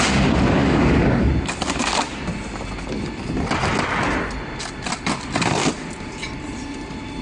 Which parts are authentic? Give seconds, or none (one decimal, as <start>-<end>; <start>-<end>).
0.0-0.6; 1.3-7.2